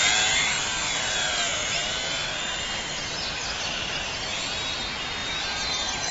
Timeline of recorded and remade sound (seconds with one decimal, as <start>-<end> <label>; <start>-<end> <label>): 0.0-0.6 recorded; 0.6-3.9 remade; 3.9-5.2 recorded; 5.2-6.1 remade